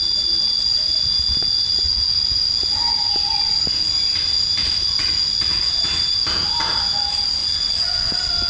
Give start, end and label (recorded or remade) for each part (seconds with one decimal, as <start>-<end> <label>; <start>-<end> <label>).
0.0-7.4 recorded; 7.4-8.1 remade; 8.1-8.5 recorded